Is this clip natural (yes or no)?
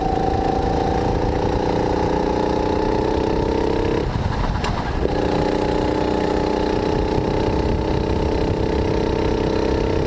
yes